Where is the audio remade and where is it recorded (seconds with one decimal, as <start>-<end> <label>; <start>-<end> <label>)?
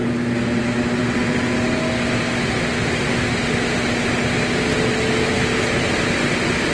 0.0-6.7 recorded